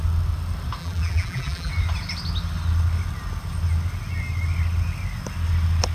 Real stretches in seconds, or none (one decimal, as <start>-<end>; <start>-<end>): 0.0-0.8; 1.7-5.9